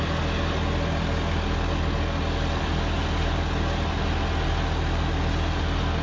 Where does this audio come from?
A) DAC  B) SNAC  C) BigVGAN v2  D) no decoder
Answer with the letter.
D